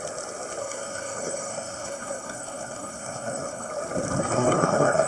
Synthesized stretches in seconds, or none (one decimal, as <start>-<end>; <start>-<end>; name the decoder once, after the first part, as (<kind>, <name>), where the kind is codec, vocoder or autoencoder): 0.6-3.7 (codec, SNAC); 4.2-5.1